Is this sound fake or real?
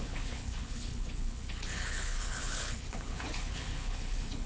fake